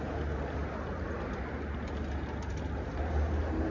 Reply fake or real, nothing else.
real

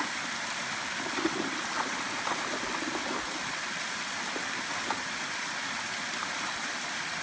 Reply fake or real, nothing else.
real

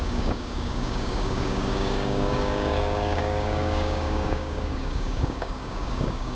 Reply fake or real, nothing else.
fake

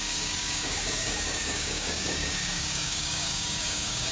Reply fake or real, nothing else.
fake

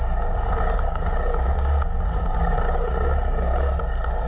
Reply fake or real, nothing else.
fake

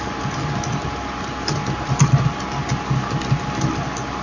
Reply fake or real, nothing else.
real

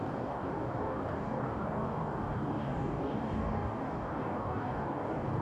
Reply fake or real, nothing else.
fake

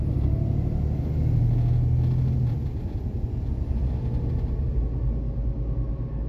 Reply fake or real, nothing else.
real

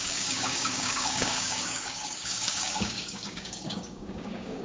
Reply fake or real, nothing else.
fake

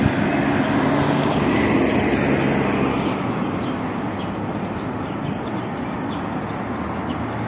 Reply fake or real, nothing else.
real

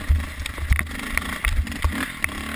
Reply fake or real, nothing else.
real